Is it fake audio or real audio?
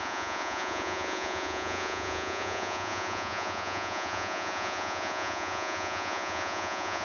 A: fake